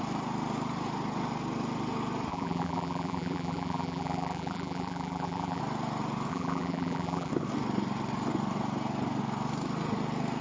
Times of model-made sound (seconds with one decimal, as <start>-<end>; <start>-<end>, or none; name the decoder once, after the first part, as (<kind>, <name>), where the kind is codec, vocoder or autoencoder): 2.3-5.6 (vocoder, BigVGAN v2); 6.3-7.3